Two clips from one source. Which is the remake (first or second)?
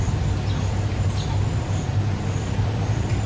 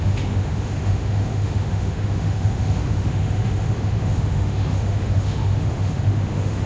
second